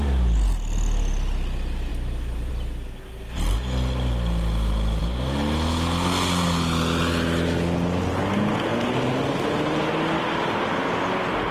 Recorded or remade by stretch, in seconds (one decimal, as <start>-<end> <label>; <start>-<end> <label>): 0.0-11.5 recorded